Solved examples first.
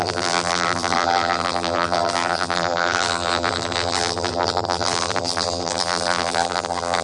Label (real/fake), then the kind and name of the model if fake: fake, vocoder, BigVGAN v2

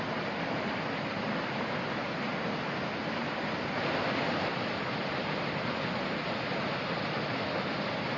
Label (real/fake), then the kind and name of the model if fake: real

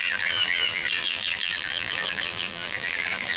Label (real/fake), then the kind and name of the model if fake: fake, vocoder, BigVGAN v2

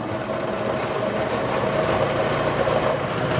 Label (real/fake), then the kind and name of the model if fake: fake, vocoder, BigVGAN v2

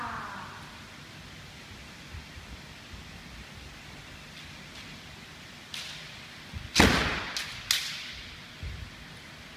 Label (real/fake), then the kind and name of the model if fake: real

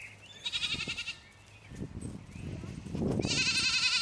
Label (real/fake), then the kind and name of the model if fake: real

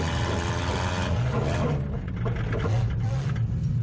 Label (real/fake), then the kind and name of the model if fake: real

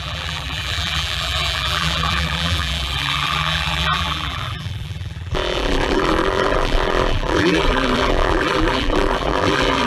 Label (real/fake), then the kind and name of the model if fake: fake, vocoder, BigVGAN v2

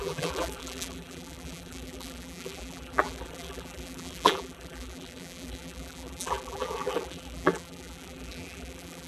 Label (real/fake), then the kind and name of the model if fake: fake, vocoder, BigVGAN v2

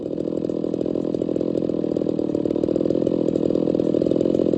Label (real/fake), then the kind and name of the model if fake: real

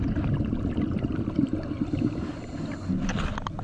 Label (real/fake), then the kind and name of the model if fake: real